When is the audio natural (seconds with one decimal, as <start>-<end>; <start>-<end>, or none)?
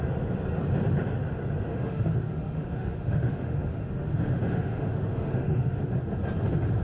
0.0-1.7; 5.8-6.8